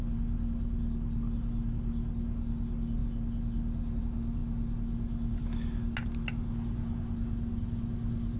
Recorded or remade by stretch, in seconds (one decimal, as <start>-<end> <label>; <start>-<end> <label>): 0.0-8.4 recorded